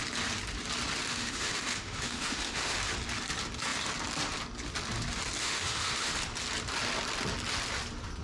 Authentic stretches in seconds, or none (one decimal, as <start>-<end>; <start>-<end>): 0.0-1.1; 2.8-5.4; 6.1-8.2